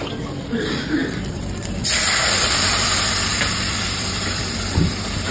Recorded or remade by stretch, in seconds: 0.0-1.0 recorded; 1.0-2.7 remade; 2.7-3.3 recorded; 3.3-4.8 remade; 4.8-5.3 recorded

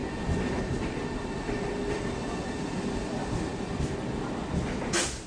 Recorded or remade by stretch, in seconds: 0.0-1.9 recorded; 1.9-3.5 remade; 3.5-5.3 recorded

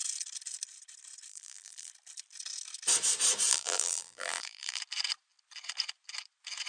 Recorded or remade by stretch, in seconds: 0.0-1.3 recorded; 1.3-1.9 remade; 1.9-3.5 recorded; 3.5-4.8 remade; 4.8-6.7 recorded